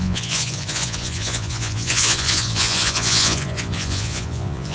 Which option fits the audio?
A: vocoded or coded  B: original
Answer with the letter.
A